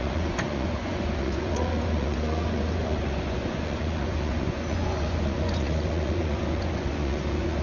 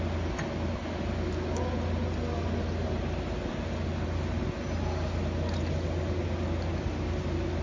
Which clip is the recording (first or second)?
second